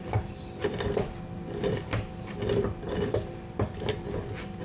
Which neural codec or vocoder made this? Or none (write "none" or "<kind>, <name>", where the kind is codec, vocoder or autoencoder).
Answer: none